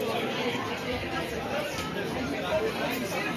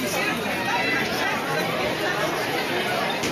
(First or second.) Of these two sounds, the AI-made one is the first